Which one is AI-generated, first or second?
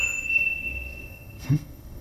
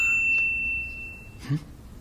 first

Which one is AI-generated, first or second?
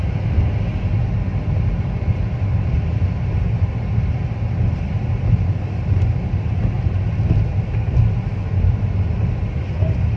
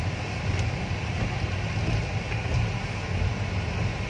first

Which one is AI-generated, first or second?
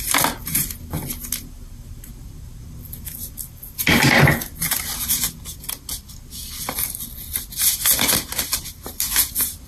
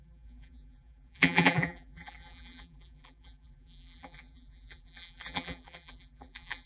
second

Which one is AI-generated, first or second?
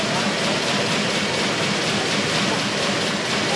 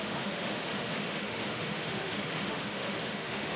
second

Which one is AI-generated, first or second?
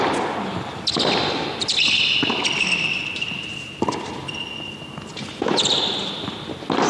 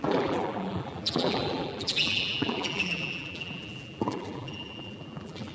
second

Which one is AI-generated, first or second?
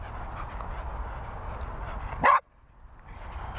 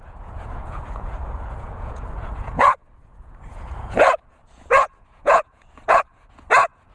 second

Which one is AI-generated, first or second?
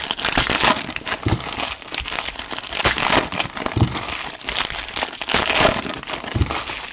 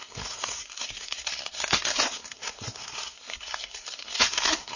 second